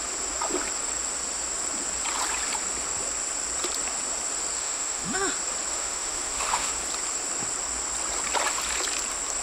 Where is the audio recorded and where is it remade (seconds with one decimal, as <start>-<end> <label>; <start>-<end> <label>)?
0.0-4.6 recorded; 4.6-5.3 remade; 5.3-5.7 recorded; 5.7-6.7 remade; 6.7-9.4 recorded